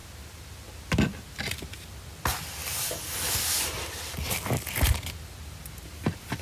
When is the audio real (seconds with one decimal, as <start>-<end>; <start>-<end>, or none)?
0.0-6.4